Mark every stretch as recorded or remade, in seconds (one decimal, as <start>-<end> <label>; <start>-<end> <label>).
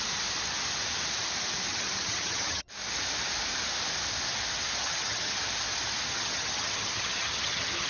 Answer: 0.0-1.7 recorded; 1.7-2.7 remade; 2.7-4.8 recorded; 4.8-5.5 remade; 5.5-6.1 recorded; 6.1-7.9 remade